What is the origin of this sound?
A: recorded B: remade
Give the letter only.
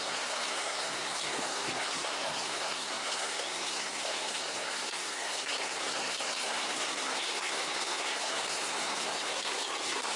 B